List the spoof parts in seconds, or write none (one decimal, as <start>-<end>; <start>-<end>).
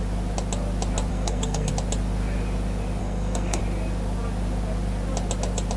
1.1-1.7; 3.0-3.6